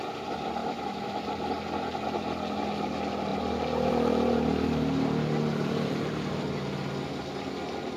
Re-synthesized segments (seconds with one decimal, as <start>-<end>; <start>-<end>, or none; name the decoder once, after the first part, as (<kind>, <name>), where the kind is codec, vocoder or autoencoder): 0.6-1.2 (autoencoder, DAC-VAE)